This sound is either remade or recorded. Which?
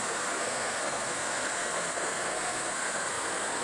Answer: remade